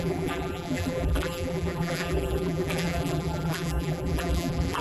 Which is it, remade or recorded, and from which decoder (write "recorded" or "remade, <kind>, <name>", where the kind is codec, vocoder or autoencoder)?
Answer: remade, vocoder, BigVGAN v2